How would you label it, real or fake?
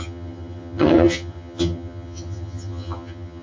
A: fake